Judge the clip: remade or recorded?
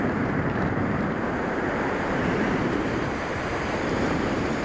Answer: remade